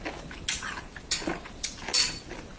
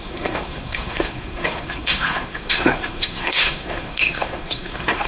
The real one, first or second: first